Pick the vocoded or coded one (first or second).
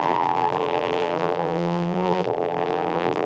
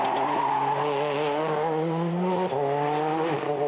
first